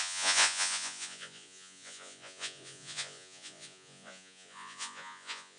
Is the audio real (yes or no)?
no